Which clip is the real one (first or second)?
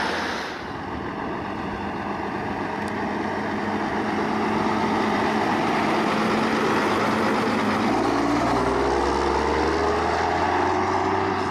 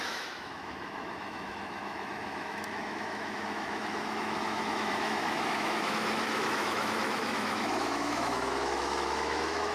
first